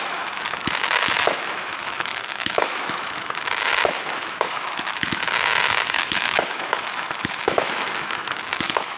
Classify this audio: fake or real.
fake